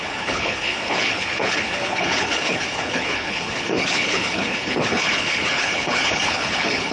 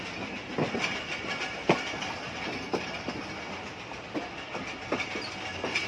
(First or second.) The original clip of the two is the second